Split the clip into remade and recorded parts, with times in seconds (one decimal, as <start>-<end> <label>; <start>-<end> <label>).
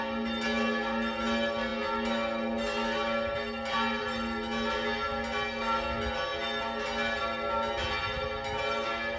0.0-9.2 recorded